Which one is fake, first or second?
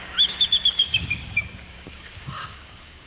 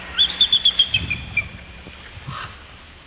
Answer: first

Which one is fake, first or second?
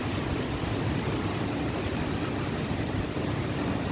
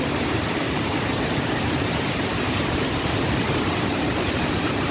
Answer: second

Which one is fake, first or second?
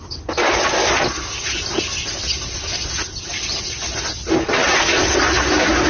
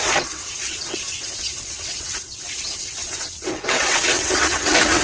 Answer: second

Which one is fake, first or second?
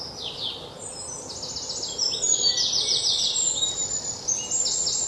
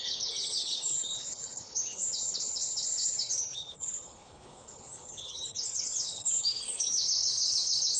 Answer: second